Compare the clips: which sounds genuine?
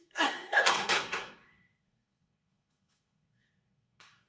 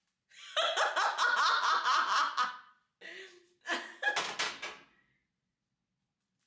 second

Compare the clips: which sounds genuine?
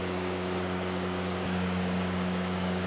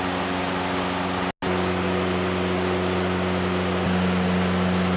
second